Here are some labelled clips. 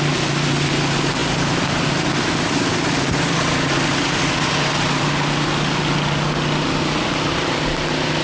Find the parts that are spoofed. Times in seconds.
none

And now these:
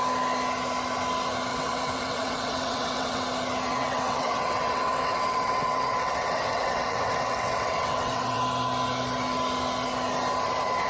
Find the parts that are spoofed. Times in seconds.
1.5-3.2; 3.7-8.4

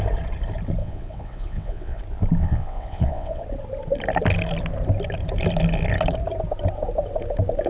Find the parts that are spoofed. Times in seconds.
0.8-2.0; 2.4-3.4

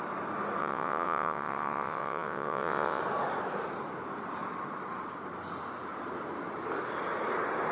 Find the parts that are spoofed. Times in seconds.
0.6-3.0

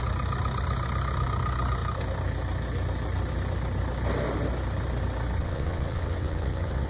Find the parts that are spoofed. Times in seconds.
5.4-6.9

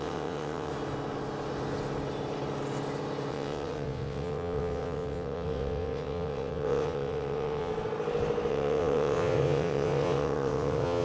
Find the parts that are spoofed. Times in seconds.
0.0-0.7; 3.3-7.7; 8.5-11.0

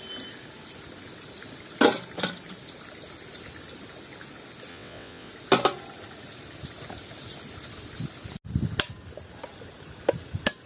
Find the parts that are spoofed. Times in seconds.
4.7-5.3

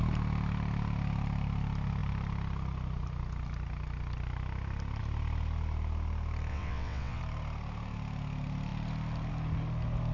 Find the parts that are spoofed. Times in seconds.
6.5-7.2